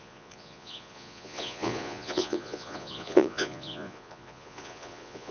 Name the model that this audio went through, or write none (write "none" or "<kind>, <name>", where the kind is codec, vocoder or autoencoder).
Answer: vocoder, Vocos